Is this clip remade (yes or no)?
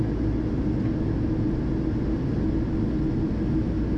no